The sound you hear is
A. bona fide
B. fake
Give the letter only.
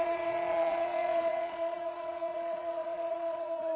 B